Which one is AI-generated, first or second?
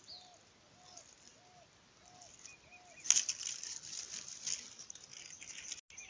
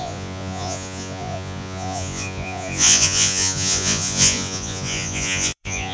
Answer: second